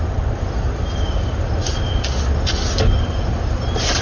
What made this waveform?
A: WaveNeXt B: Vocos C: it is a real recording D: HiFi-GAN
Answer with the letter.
C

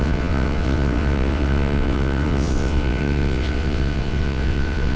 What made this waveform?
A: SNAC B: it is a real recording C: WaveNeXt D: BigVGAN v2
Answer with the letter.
C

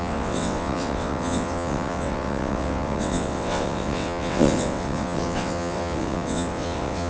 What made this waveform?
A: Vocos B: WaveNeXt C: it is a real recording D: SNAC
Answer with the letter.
B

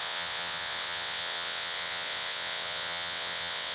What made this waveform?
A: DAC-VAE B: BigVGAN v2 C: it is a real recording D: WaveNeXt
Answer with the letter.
D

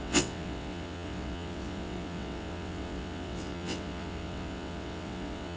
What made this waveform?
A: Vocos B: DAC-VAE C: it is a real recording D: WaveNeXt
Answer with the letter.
D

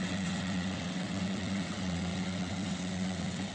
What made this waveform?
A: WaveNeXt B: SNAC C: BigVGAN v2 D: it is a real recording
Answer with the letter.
A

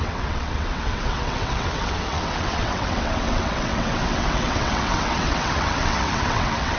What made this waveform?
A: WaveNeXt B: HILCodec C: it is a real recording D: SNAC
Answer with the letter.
A